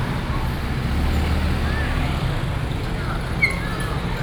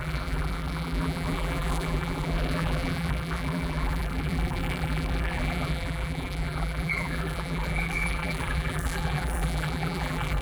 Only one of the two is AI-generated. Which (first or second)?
second